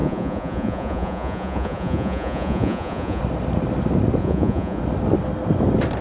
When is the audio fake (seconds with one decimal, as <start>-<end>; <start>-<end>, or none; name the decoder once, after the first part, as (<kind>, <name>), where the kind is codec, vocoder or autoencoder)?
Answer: 0.0-3.2 (vocoder, Vocos); 4.2-4.8